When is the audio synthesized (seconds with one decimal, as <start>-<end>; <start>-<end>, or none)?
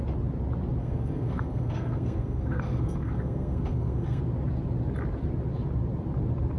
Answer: 0.8-4.2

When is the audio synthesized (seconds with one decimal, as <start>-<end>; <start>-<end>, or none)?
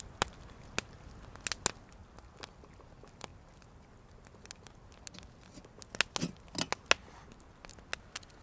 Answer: none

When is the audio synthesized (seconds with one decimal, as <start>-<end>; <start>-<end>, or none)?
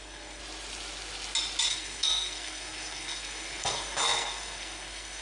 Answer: 0.0-0.4; 1.7-5.2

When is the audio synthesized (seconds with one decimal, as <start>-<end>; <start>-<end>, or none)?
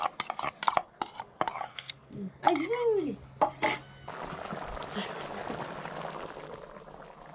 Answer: 1.7-2.4